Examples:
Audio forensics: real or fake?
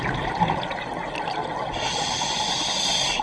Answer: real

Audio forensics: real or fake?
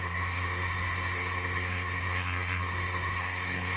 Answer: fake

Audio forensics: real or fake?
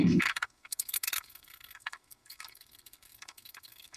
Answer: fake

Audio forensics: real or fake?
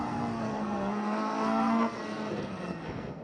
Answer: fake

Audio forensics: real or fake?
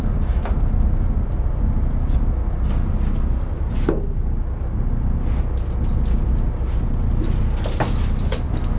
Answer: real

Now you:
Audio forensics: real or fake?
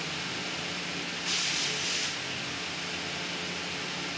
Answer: real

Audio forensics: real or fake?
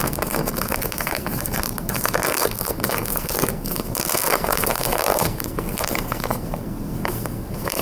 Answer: fake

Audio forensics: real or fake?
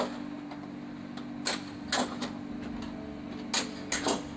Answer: real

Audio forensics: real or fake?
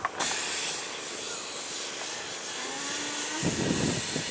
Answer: real